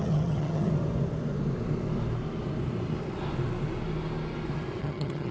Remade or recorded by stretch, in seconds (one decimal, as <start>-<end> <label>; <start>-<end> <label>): 0.0-0.7 remade; 0.7-4.8 recorded; 4.8-5.3 remade